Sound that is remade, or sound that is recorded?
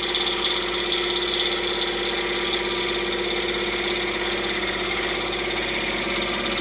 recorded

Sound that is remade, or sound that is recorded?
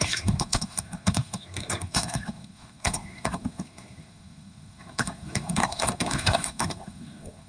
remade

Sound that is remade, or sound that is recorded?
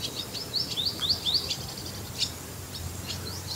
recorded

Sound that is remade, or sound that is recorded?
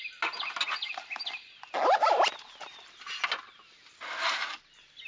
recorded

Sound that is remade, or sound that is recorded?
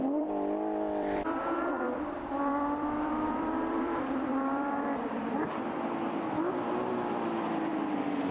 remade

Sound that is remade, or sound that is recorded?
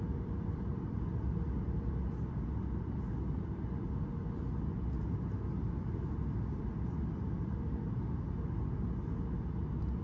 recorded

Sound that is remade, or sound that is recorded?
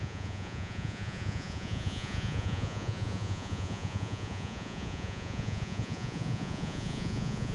remade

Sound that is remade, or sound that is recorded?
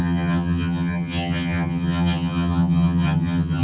remade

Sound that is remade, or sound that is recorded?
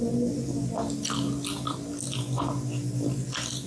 recorded